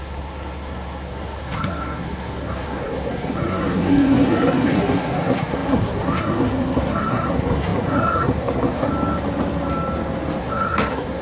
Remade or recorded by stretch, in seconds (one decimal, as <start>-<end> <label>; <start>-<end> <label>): 0.0-8.9 remade; 8.9-10.4 recorded; 10.4-11.2 remade